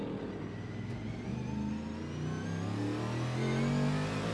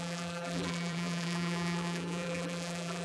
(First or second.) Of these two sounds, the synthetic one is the second